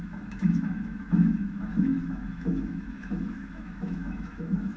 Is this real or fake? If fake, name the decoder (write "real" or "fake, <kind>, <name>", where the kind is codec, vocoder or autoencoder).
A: fake, autoencoder, DAC-VAE